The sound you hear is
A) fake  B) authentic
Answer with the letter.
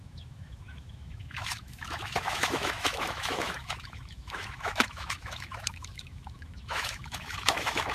A